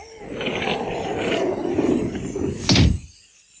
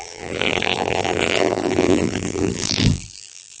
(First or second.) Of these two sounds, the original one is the first